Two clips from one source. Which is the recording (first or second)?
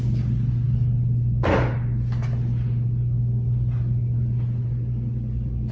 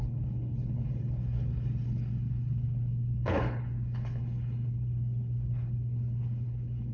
first